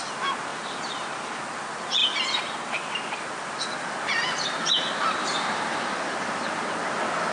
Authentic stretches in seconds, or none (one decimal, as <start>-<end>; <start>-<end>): 0.0-0.5; 1.4-2.0; 6.4-7.3